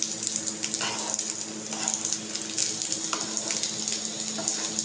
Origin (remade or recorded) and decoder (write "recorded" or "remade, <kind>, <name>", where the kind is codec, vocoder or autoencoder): recorded